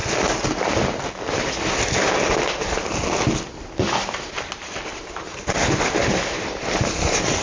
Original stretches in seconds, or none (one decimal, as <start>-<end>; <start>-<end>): 0.0-4.9; 6.5-7.4